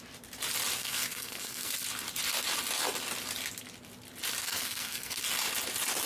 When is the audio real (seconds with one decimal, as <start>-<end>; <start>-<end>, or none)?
0.0-0.8; 1.7-4.4; 5.2-6.1

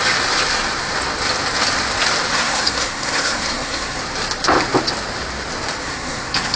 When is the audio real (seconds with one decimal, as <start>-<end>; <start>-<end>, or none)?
0.0-2.3; 4.0-5.8

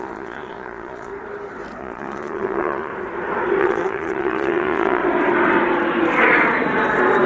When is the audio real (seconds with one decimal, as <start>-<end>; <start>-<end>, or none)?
1.1-1.8; 2.9-3.6; 5.0-7.3

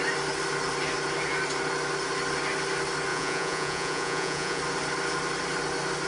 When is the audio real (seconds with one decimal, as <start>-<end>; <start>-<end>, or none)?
0.0-3.1; 4.6-6.1

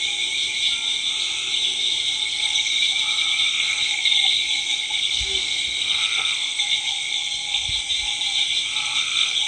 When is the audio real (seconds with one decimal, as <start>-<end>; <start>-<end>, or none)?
0.0-2.2; 2.8-3.5; 7.7-8.7

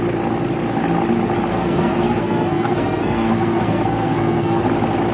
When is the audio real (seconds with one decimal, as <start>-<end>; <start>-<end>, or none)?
0.0-1.5; 4.6-5.1